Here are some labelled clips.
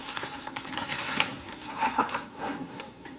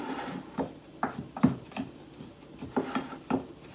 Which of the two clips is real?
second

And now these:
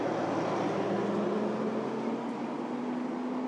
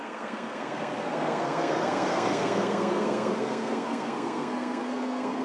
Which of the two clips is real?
first